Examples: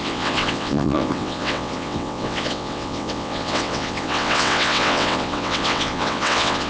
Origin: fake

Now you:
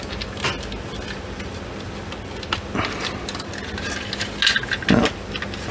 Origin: real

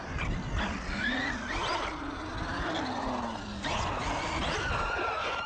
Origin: real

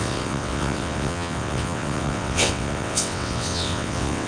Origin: fake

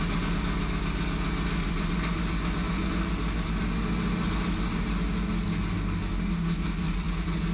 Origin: real